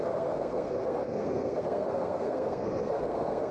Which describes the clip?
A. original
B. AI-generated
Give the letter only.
B